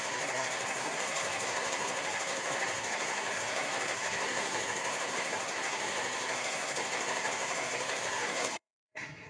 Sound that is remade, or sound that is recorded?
remade